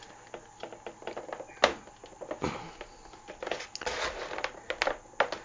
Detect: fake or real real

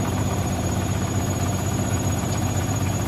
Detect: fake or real fake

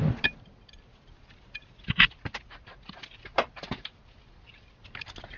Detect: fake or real real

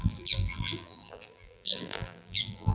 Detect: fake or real fake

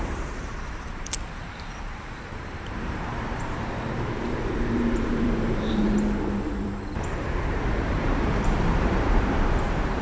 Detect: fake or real fake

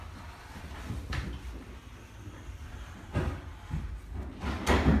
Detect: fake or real real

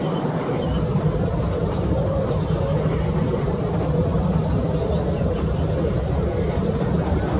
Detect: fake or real fake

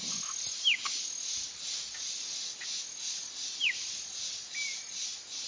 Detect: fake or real real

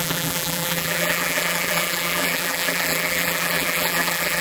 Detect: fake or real fake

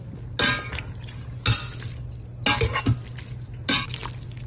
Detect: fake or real real